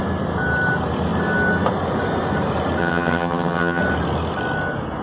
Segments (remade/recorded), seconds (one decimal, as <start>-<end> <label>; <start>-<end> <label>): 0.0-2.8 recorded; 2.8-3.8 remade; 3.8-5.0 recorded